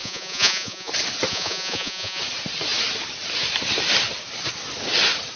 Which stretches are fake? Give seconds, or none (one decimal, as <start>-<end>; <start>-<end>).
0.0-0.9; 1.3-2.2